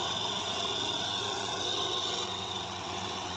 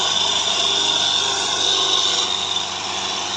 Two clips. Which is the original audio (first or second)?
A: second